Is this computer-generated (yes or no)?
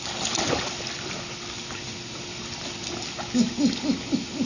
no